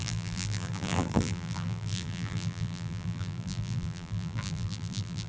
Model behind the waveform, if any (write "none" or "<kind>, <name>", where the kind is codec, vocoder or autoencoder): vocoder, BigVGAN v2